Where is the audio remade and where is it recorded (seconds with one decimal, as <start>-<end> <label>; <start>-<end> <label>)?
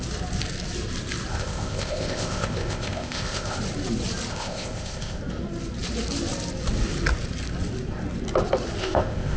0.0-1.3 recorded; 1.3-3.6 remade; 3.6-4.3 recorded; 4.3-5.2 remade; 5.2-8.8 recorded; 8.8-9.4 remade